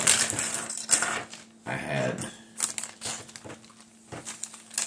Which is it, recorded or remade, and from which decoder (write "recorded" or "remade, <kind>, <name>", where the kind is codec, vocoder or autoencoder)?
recorded